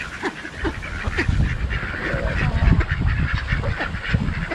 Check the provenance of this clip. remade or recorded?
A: remade